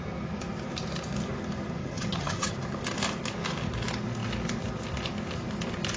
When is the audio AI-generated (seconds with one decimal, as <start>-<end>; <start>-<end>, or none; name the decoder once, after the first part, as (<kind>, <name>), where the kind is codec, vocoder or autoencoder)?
1.8-2.5 (vocoder, HiFi-GAN)